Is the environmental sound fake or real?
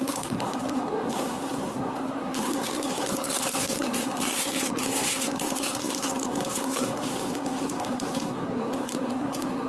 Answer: fake